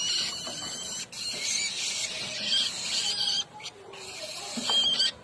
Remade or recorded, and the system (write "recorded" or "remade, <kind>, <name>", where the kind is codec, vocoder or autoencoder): recorded